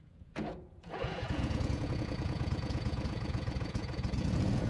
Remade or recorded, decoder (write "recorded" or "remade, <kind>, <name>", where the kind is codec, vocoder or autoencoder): remade, vocoder, Vocos